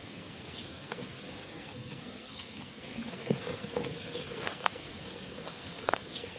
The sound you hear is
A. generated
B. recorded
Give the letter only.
A